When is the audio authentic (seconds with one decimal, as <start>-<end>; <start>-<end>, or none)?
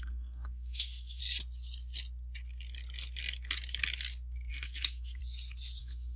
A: 1.2-4.5; 5.2-5.8